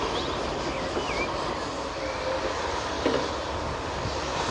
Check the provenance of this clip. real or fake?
real